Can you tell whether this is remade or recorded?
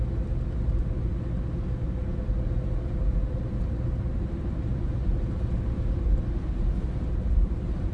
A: recorded